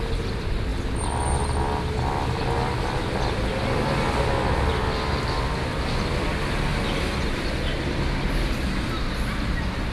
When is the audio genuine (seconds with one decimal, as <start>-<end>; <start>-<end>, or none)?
0.0-9.9